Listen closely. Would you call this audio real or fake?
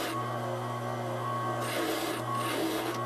real